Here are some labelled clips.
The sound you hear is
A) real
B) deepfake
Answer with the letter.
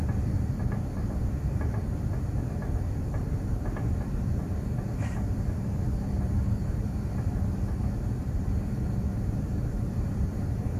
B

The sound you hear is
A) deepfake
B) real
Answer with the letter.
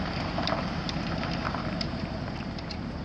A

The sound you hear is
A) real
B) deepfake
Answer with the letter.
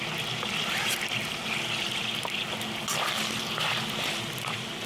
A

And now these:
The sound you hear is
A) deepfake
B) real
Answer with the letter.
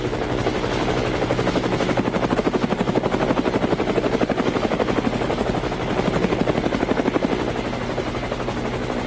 B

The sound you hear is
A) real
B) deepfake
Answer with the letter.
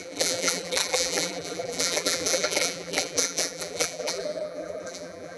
B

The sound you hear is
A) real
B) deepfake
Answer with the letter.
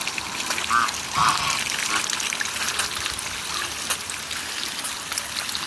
A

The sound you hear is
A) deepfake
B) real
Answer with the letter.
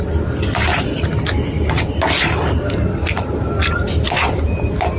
B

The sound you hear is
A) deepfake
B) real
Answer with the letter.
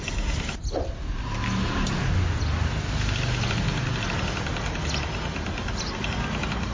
B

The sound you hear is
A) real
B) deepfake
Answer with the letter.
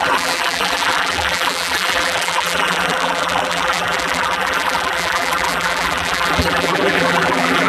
B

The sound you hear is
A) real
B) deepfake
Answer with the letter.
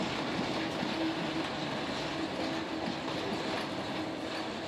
A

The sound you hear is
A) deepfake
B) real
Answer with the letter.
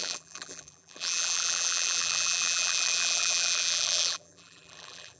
A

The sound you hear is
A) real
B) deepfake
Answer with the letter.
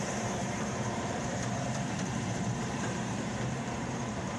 B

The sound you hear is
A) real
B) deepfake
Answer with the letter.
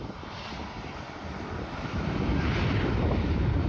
B